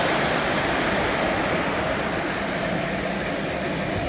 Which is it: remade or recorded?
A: recorded